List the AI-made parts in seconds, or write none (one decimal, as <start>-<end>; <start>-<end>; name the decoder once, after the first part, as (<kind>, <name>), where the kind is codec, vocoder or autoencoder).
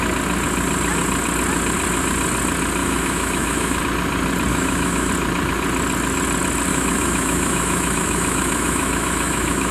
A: 2.8-3.8 (autoencoder, DAC-VAE); 4.5-5.1; 6.7-9.7